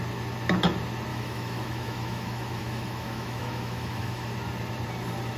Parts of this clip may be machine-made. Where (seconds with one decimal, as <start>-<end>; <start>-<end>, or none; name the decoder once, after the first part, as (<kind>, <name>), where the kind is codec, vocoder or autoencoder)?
1.1-4.3 (autoencoder, DAC-VAE)